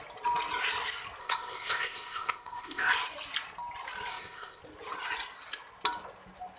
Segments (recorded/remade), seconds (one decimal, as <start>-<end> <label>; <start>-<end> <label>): 0.0-1.2 recorded; 1.2-2.9 remade; 2.9-4.1 recorded; 4.1-4.6 remade; 4.6-6.6 recorded